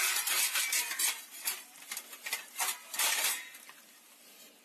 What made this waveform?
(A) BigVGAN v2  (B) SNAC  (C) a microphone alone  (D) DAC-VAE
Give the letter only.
C